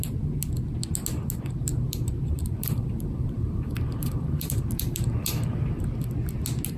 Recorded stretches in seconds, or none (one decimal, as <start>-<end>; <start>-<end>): 0.0-1.7; 5.8-6.8